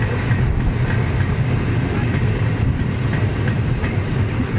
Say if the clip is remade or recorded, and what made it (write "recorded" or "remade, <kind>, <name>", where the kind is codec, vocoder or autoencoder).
recorded